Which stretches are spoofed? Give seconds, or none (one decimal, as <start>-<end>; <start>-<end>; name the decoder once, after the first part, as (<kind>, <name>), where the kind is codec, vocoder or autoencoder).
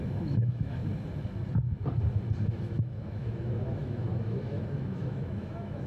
0.0-0.8 (autoencoder, DAC-VAE); 2.5-5.9